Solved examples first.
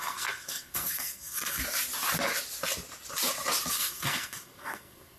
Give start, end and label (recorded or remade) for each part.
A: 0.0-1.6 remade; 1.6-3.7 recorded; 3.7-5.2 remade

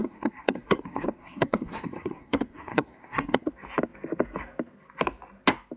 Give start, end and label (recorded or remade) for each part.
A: 0.0-3.5 remade; 3.5-5.8 recorded

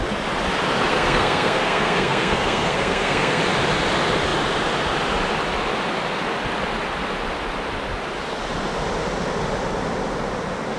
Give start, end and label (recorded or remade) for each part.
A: 0.0-0.9 recorded; 0.9-3.4 remade; 3.4-10.8 recorded

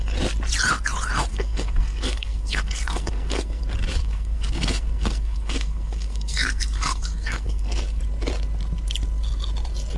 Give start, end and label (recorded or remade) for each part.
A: 0.0-1.3 recorded; 1.3-3.6 remade; 3.6-4.0 recorded; 4.0-8.0 remade; 8.0-10.0 recorded

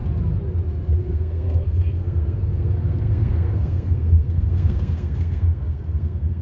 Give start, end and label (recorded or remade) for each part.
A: 0.0-1.1 recorded; 1.1-6.4 remade

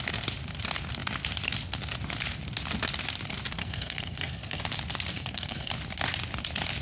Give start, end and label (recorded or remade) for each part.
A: 0.0-3.6 recorded; 3.6-4.6 remade; 4.6-5.1 recorded; 5.1-5.7 remade; 5.7-6.8 recorded

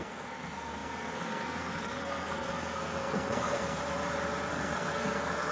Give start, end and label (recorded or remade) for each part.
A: 0.0-3.8 remade; 3.8-4.5 recorded; 4.5-5.5 remade